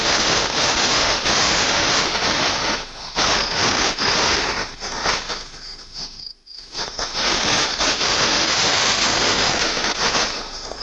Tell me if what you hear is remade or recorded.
remade